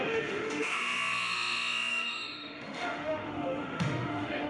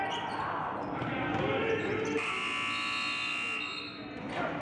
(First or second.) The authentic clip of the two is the second